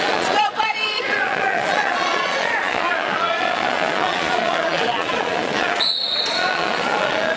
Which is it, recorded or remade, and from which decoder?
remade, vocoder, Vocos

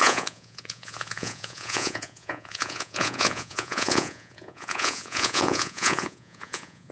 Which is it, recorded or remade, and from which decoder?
remade, vocoder, Vocos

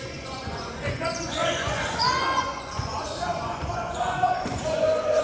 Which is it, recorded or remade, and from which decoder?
remade, vocoder, Vocos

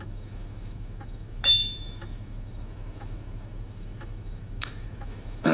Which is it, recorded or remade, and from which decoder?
remade, autoencoder, DAC-VAE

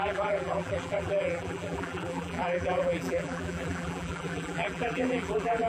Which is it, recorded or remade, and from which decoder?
remade, vocoder, BigVGAN v2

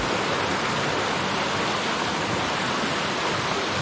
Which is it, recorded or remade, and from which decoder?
recorded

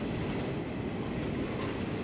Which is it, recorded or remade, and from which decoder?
recorded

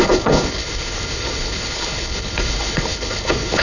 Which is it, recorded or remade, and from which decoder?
remade, codec, HILCodec